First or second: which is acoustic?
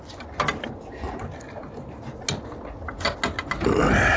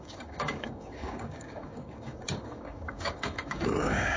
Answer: first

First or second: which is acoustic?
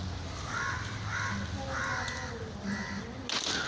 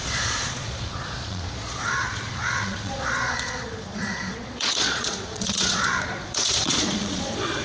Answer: first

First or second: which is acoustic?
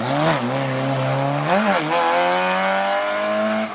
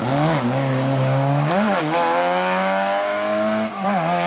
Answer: first